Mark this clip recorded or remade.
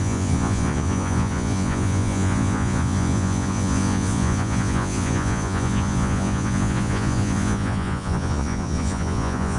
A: remade